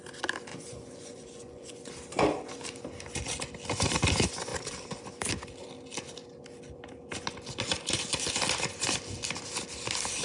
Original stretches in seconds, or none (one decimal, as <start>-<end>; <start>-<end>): 0.0-0.5; 1.9-10.2